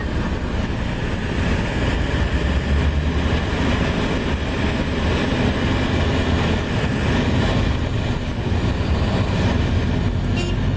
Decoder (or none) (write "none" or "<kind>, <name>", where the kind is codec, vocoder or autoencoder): none